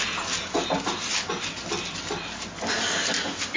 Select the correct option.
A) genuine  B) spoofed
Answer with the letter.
A